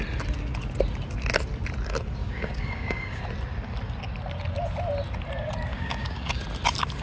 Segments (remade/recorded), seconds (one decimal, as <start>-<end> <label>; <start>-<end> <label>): 0.0-2.2 recorded; 2.2-3.2 remade; 3.2-5.7 recorded; 5.7-6.4 remade; 6.4-7.0 recorded